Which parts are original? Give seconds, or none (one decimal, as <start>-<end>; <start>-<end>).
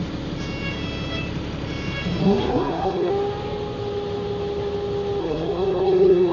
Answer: 0.0-2.2; 3.1-5.2